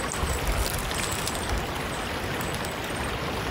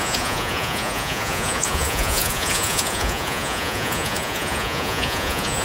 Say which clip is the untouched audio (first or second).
first